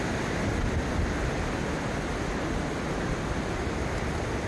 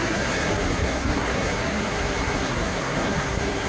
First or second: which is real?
first